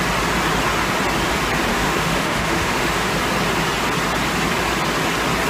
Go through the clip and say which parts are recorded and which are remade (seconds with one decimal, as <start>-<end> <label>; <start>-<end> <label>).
0.0-1.7 recorded; 1.7-3.1 remade; 3.1-5.5 recorded